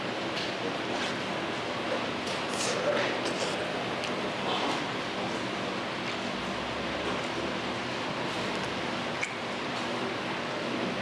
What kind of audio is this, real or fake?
real